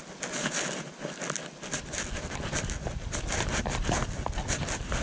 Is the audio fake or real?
real